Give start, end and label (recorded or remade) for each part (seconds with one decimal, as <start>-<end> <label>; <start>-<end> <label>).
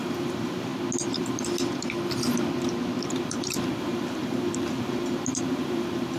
0.0-0.7 remade; 0.7-3.0 recorded; 3.0-6.2 remade